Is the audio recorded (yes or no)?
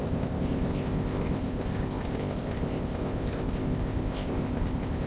no